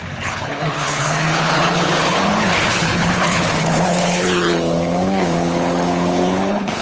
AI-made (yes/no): yes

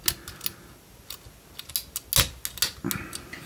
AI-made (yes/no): no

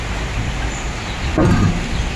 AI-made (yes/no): no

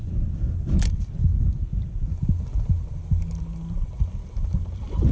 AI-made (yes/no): no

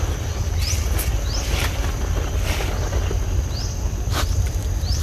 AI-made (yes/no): no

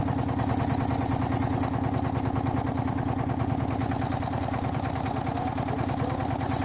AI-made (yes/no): no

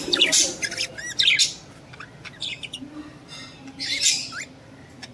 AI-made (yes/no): no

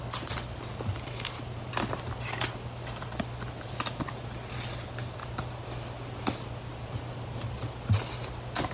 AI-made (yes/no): no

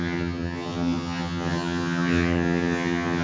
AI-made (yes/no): yes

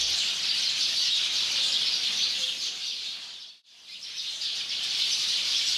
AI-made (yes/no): yes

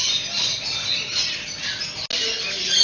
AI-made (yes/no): no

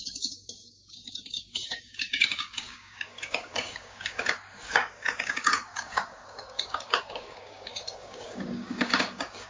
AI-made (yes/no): yes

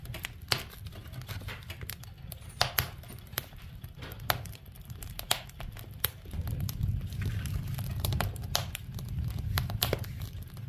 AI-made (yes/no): no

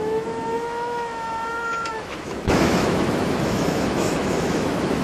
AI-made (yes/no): yes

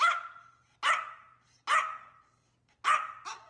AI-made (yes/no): no